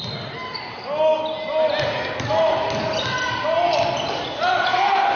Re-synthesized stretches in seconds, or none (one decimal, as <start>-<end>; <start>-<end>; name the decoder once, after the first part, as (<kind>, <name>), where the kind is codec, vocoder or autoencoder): none